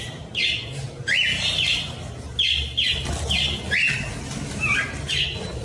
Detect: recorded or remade recorded